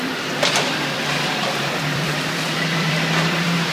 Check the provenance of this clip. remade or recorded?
remade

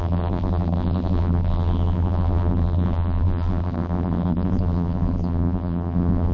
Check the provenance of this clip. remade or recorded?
remade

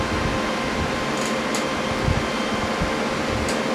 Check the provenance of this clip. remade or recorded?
recorded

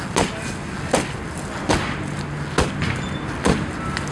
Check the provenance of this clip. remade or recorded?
recorded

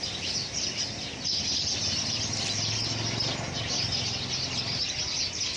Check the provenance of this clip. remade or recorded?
recorded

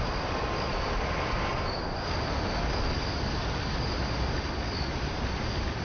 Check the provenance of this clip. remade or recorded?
recorded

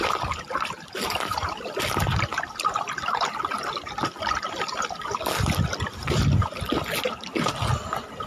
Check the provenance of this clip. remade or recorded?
recorded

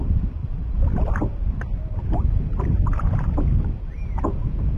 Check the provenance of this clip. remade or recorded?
remade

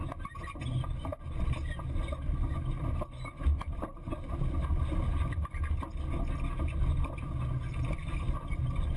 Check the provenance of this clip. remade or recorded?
recorded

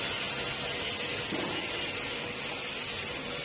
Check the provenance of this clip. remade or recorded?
recorded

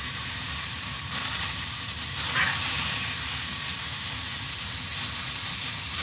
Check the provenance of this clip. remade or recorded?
remade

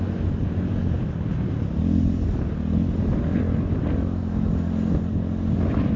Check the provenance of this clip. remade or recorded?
recorded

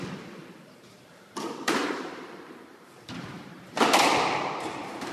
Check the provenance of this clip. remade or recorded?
remade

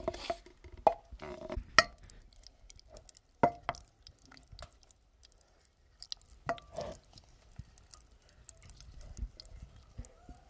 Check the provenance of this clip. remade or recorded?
recorded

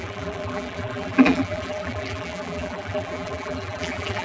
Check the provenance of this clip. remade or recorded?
remade